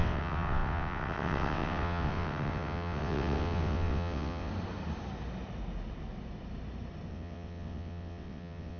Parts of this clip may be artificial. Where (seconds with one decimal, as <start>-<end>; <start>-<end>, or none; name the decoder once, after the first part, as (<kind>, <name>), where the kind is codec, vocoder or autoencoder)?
0.0-4.5 (vocoder, WaveNeXt); 7.1-8.8